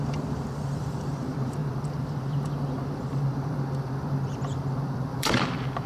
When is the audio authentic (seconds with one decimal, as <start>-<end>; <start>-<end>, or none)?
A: none

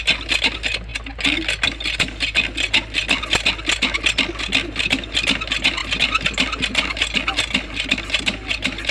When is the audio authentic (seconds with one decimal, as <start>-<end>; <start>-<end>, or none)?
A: 0.0-8.9